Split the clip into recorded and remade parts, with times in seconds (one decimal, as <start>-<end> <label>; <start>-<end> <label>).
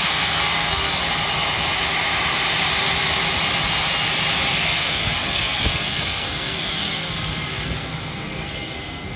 0.0-1.0 remade; 1.0-4.5 recorded; 4.5-9.2 remade